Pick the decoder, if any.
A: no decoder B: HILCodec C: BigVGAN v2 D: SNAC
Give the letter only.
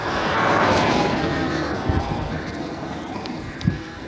D